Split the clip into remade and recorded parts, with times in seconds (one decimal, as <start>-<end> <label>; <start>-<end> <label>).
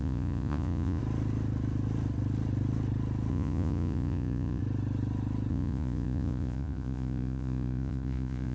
0.0-1.0 remade; 1.0-3.3 recorded; 3.3-4.6 remade; 4.6-5.5 recorded; 5.5-8.5 remade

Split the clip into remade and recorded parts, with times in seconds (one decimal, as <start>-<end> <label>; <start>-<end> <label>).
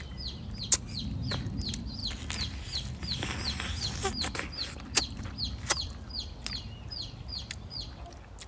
0.0-8.5 recorded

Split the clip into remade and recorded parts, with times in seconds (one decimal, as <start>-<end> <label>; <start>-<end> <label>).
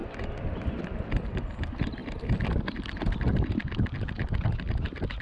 0.0-5.2 recorded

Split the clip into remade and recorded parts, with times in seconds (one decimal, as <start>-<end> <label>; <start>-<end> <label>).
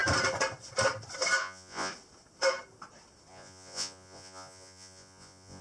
0.0-1.4 recorded; 1.4-1.9 remade; 1.9-3.3 recorded; 3.3-5.6 remade